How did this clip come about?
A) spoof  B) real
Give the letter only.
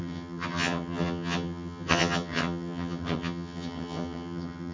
A